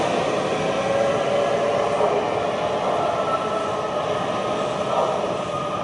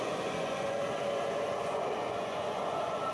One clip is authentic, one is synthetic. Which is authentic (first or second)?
first